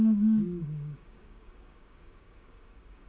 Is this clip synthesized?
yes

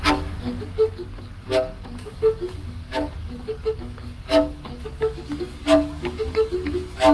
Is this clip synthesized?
yes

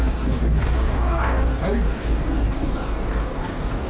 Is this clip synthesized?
yes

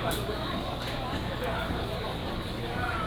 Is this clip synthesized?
yes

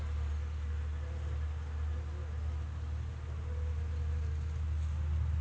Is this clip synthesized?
no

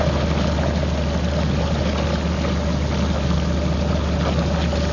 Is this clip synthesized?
no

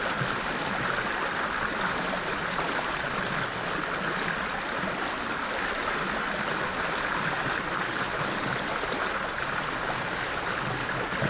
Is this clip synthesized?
no